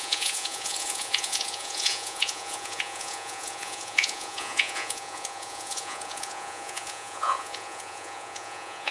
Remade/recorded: remade